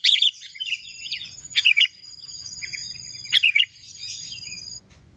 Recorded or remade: remade